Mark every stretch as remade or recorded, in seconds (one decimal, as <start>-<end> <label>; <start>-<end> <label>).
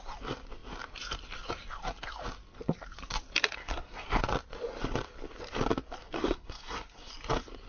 0.0-3.6 recorded; 3.6-4.2 remade; 4.2-6.0 recorded; 6.0-7.1 remade; 7.1-7.7 recorded